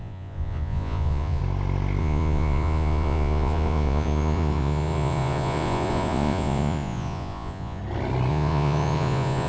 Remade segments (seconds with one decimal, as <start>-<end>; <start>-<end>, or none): 0.0-1.4; 2.0-7.8; 8.3-9.5